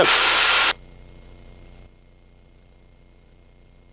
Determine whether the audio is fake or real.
real